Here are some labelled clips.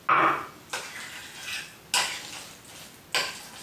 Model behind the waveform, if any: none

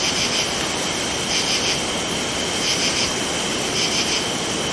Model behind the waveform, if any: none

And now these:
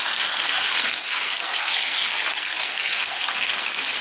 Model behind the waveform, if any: codec, SNAC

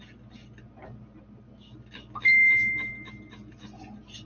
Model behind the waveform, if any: none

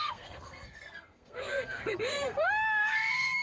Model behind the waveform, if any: codec, SNAC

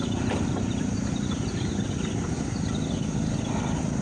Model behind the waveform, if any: none